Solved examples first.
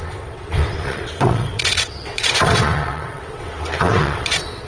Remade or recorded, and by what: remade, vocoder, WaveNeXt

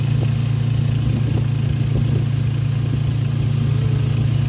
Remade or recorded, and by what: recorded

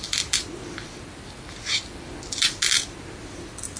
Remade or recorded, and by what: recorded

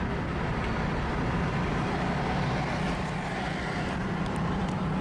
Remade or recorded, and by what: recorded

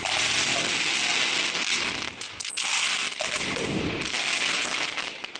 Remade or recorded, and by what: recorded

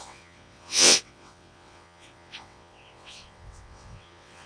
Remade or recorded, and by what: remade, vocoder, WaveNeXt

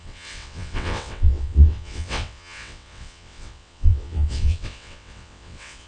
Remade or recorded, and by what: remade, vocoder, WaveNeXt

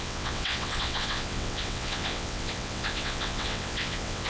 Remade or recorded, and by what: remade, vocoder, WaveNeXt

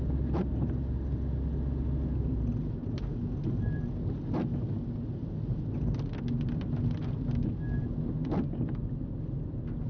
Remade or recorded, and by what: recorded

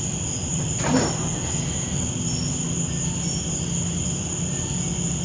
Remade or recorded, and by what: recorded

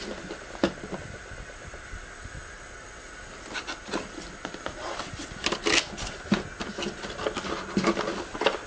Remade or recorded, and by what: recorded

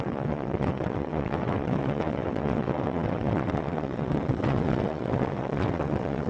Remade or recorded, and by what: remade, vocoder, WaveNeXt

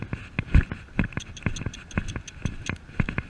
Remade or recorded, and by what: recorded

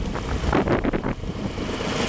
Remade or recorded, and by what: recorded